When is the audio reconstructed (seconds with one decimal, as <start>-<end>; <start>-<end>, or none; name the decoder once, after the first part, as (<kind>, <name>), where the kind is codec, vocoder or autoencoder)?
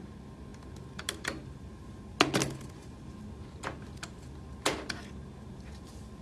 none